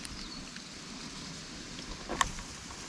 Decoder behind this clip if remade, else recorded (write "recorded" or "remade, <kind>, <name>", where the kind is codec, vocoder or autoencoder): recorded